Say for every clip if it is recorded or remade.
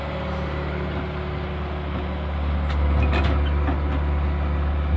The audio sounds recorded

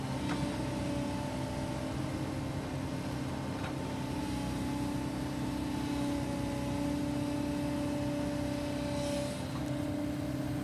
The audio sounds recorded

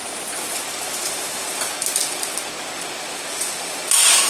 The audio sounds recorded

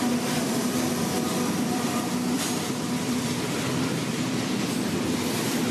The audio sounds remade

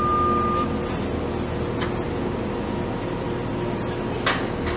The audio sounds recorded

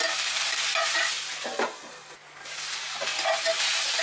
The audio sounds recorded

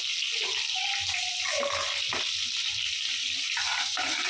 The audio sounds recorded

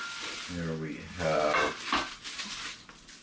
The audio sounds recorded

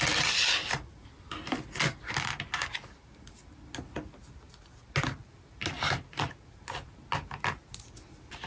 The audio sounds recorded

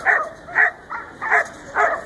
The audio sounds remade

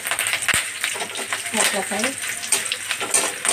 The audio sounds recorded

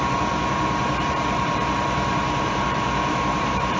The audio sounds remade